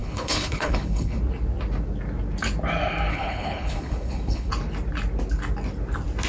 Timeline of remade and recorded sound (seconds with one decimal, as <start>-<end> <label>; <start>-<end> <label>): 0.0-1.2 remade; 1.2-3.1 recorded; 3.1-4.5 remade; 4.5-6.3 recorded